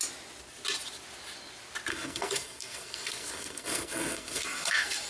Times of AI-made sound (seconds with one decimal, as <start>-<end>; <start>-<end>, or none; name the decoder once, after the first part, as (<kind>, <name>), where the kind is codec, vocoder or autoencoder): 1.9-5.1 (codec, SNAC)